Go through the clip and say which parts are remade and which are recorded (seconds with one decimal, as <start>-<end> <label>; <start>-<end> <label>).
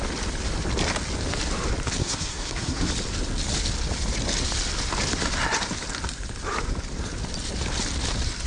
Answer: 0.0-2.0 recorded; 2.0-2.9 remade; 2.9-8.5 recorded